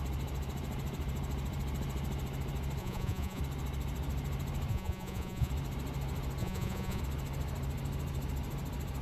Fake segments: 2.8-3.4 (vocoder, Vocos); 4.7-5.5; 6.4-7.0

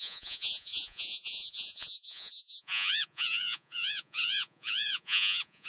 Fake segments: 0.0-5.7 (vocoder, Vocos)

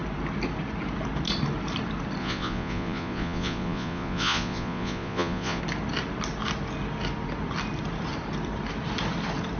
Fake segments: 2.2-5.6 (vocoder, Vocos)